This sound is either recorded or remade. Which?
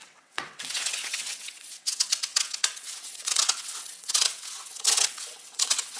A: remade